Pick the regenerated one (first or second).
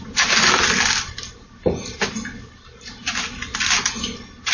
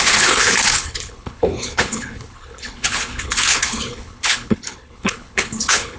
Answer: second